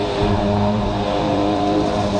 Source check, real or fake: fake